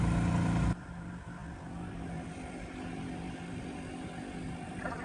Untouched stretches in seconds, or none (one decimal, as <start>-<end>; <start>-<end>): 0.0-5.0